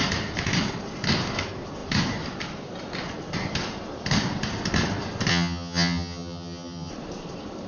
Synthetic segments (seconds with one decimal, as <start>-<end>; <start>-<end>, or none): 5.3-6.9